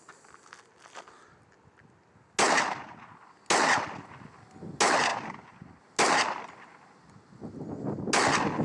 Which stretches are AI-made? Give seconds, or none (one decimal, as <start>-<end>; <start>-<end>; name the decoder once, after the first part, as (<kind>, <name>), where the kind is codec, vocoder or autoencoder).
none